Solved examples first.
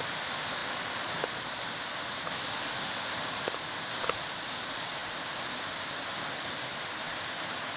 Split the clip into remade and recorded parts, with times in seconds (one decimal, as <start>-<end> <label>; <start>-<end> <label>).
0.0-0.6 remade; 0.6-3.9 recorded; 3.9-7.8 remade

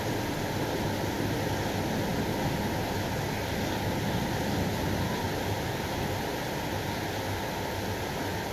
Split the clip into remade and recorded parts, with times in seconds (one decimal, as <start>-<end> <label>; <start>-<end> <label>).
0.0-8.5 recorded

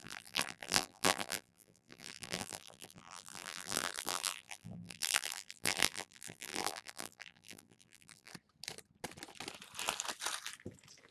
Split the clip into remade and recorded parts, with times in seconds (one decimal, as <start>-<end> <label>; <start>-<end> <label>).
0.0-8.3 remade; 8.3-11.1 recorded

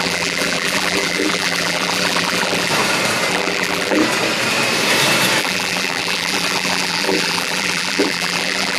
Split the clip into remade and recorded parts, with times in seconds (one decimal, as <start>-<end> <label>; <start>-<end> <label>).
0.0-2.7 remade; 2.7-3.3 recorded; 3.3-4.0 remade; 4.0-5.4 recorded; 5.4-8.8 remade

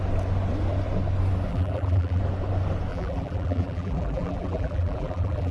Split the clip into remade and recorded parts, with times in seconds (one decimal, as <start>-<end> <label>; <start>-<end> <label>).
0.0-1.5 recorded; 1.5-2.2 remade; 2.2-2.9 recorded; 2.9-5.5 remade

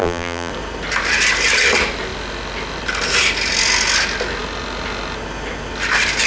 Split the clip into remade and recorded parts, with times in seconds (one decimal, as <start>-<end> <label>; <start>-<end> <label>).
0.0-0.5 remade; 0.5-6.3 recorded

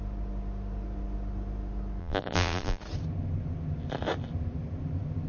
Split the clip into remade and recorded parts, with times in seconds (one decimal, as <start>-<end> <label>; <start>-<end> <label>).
0.0-2.0 recorded; 2.0-2.8 remade; 2.8-5.3 recorded

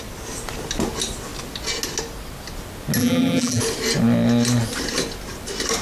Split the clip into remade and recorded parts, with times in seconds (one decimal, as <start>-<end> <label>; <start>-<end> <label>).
0.0-3.0 recorded; 3.0-3.6 remade; 3.6-5.8 recorded